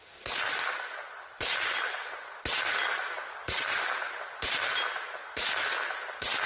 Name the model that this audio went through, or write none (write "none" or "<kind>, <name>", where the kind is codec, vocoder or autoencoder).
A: none